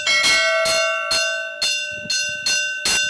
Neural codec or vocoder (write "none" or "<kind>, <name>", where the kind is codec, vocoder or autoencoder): none